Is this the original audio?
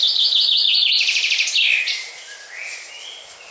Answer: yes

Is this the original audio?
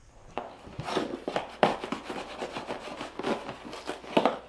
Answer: yes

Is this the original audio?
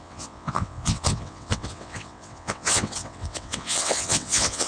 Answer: no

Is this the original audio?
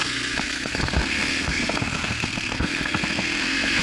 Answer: no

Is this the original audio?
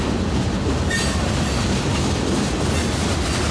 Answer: yes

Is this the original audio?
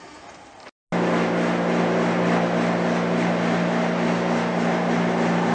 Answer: yes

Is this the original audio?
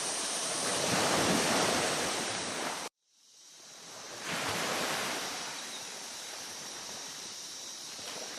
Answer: no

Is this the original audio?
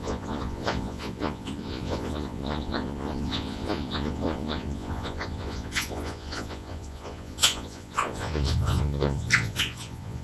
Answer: no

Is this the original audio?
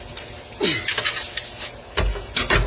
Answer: yes